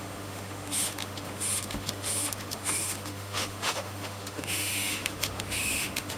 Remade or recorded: remade